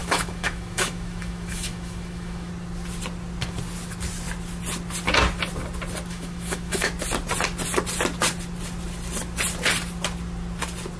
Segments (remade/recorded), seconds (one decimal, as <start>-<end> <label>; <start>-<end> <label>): 0.0-2.5 remade; 2.5-6.1 recorded; 6.1-6.9 remade; 6.9-11.0 recorded